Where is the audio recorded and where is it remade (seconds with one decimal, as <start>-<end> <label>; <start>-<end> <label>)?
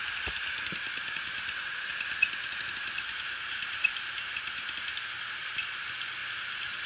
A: 0.0-6.2 recorded; 6.2-6.9 remade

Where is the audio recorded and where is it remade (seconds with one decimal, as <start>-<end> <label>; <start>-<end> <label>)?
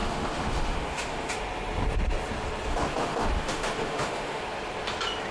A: 0.0-1.3 remade; 1.3-2.7 recorded; 2.7-4.4 remade; 4.4-5.3 recorded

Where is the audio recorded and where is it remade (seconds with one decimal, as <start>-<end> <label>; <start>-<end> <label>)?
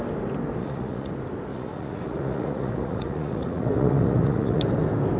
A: 0.0-0.6 recorded; 0.6-1.1 remade; 1.1-1.5 recorded; 1.5-4.6 remade; 4.6-5.2 recorded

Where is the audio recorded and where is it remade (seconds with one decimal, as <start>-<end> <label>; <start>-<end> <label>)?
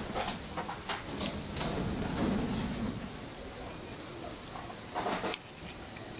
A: 0.0-6.2 recorded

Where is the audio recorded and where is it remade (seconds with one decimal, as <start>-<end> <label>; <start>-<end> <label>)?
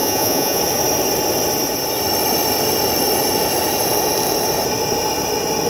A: 0.0-0.6 remade; 0.6-5.7 recorded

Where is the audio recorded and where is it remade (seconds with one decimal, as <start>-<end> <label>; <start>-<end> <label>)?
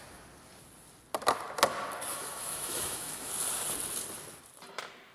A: 0.0-2.1 recorded; 2.1-3.3 remade; 3.3-5.1 recorded